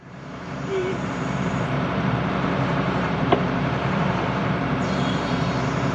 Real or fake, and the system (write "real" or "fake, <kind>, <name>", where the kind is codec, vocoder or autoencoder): fake, vocoder, BigVGAN v2